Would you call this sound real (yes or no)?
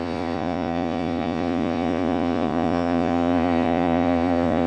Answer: no